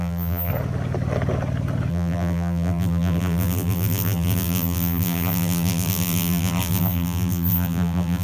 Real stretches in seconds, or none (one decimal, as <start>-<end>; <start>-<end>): 0.5-1.9